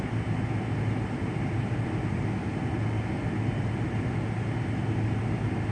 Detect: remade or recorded recorded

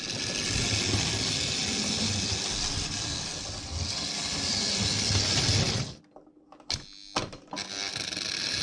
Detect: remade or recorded recorded